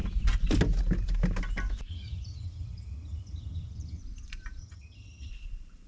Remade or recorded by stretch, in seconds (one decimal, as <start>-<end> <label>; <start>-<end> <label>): 0.0-1.9 recorded; 1.9-4.0 remade; 4.0-4.6 recorded; 4.6-5.3 remade; 5.3-5.9 recorded